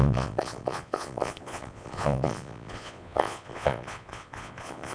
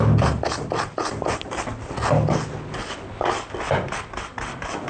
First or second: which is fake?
first